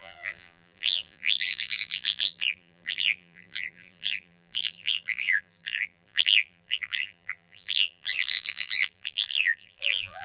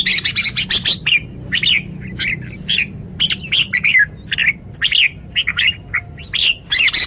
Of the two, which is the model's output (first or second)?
first